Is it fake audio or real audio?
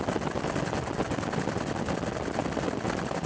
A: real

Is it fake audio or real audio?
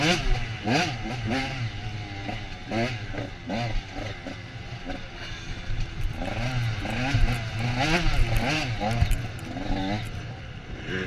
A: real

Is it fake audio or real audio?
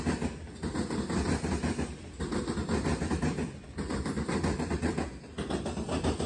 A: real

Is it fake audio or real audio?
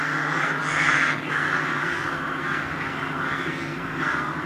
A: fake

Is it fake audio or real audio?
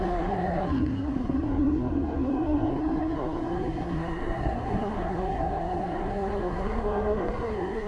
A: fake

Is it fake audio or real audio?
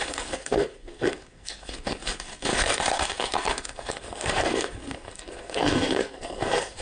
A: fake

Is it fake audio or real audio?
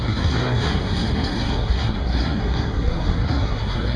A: fake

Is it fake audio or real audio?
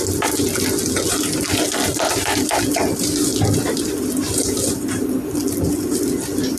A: real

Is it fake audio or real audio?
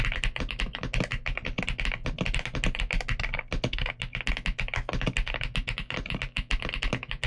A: real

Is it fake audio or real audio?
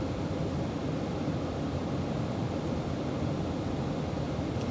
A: real